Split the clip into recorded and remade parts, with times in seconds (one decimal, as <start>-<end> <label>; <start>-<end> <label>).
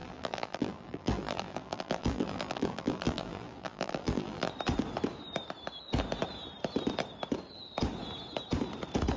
0.0-4.5 remade; 4.5-9.2 recorded